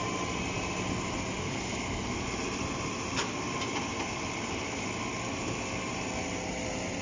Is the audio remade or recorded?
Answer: recorded